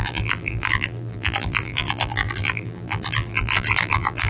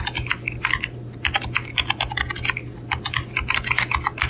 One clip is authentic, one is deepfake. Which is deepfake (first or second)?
first